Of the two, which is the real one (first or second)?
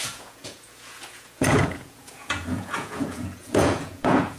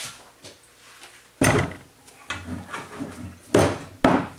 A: second